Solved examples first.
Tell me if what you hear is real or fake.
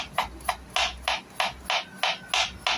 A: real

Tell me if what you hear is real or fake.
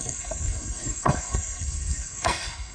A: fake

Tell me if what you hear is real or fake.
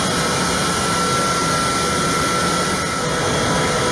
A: real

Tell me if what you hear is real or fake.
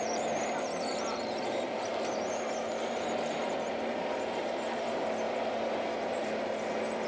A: real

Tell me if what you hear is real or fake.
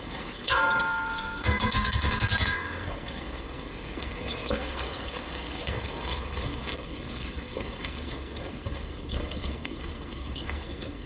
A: fake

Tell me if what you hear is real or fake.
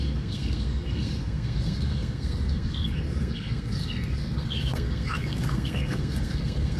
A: fake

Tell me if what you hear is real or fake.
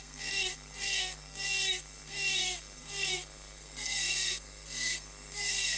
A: fake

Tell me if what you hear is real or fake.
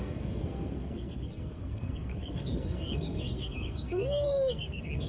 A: fake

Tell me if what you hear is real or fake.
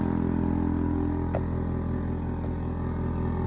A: real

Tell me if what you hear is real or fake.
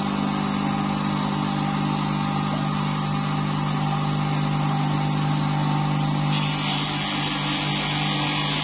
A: real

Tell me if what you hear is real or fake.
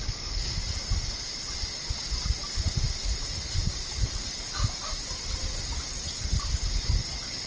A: real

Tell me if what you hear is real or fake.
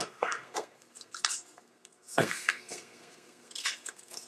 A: fake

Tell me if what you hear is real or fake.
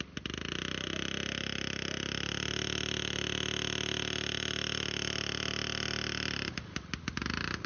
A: real